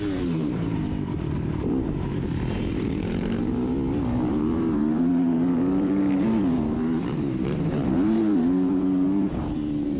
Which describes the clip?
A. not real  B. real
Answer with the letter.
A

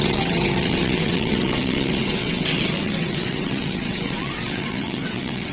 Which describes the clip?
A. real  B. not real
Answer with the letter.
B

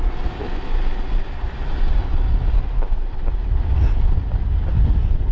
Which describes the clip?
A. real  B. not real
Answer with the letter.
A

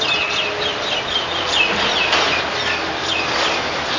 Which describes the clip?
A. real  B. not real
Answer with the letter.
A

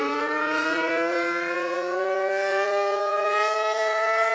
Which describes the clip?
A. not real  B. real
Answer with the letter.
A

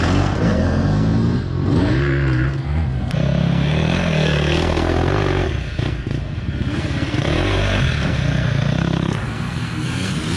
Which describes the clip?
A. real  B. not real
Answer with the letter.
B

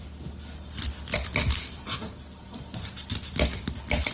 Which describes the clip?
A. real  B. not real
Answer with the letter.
A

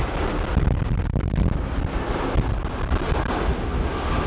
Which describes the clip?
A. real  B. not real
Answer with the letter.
A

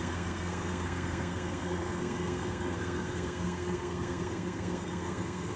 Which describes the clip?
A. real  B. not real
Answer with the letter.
B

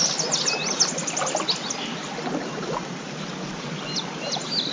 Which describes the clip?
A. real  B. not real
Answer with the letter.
A